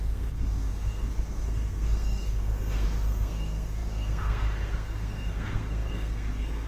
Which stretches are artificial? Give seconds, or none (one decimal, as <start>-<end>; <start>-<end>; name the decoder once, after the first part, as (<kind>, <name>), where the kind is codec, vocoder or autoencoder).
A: 0.0-6.7 (codec, SNAC)